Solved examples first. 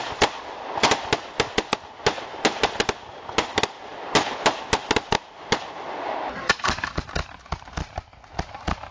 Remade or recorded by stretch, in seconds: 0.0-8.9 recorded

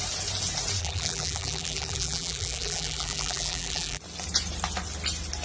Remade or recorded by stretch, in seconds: 0.0-0.8 recorded; 0.8-4.0 remade; 4.0-5.4 recorded

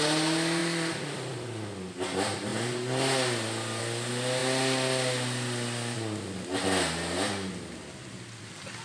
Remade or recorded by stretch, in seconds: 0.0-0.6 recorded; 0.6-1.7 remade; 1.7-8.8 recorded

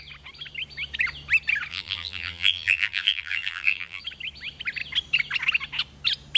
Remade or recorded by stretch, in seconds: 0.0-1.7 recorded; 1.7-4.0 remade; 4.0-6.4 recorded